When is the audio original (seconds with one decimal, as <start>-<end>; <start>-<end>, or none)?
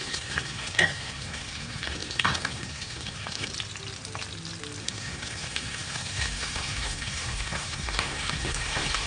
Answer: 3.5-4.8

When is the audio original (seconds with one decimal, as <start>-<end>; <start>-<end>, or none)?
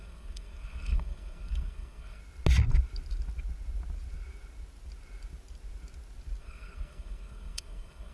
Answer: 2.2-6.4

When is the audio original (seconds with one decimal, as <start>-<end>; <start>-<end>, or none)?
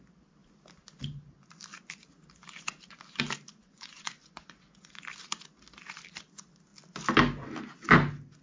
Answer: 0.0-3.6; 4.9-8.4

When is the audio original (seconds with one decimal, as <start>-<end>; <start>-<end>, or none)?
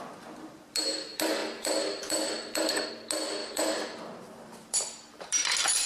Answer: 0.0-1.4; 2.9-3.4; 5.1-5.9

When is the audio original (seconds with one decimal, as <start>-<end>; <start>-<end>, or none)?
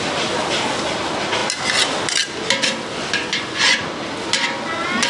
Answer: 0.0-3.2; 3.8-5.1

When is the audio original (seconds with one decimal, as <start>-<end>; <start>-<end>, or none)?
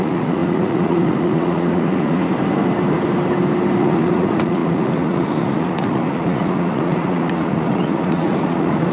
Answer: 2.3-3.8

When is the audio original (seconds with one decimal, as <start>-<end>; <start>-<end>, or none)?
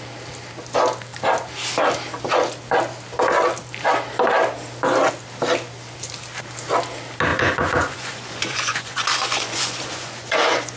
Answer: 0.0-7.3